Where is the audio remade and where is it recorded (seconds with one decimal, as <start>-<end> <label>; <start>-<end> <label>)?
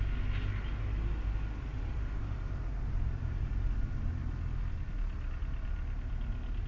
0.0-1.7 recorded; 1.7-3.5 remade; 3.5-6.7 recorded